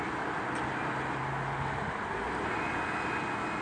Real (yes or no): yes